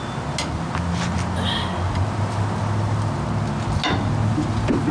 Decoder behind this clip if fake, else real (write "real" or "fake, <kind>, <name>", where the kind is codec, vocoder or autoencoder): real